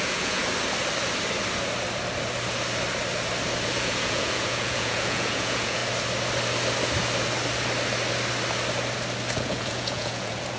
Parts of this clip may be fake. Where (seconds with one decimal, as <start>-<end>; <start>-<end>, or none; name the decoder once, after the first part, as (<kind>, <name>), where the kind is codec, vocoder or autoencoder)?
0.0-0.4 (vocoder, Vocos); 3.7-5.8; 9.3-10.6